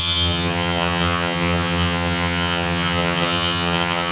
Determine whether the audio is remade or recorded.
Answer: remade